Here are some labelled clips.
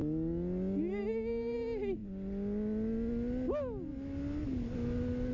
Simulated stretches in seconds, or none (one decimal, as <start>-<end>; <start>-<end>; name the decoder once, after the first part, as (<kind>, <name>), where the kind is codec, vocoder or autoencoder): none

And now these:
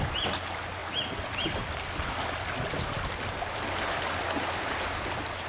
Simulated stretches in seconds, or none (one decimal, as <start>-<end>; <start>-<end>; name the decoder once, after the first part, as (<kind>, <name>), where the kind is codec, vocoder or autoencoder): none

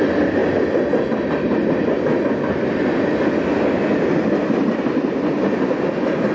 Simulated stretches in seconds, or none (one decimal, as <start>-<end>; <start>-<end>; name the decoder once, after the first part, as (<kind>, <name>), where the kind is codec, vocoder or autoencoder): none